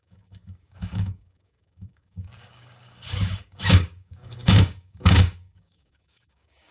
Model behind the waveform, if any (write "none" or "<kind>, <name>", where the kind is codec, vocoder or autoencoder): codec, DAC